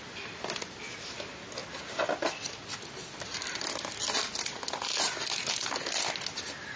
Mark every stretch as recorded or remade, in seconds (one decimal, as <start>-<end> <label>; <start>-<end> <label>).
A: 0.0-6.8 recorded